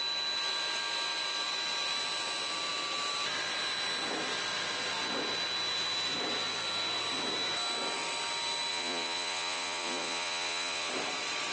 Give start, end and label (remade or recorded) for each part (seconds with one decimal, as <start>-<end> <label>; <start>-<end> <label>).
0.0-8.7 recorded; 8.7-10.9 remade; 10.9-11.5 recorded